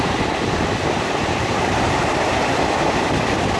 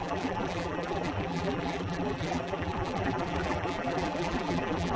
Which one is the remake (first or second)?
second